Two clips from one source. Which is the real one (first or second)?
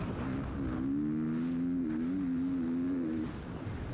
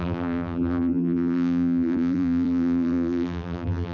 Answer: first